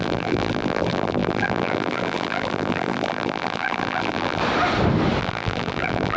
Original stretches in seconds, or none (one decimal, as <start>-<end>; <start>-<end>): 4.4-5.2